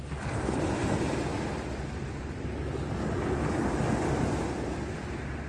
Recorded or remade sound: recorded